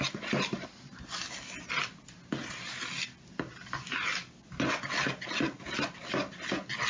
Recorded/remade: recorded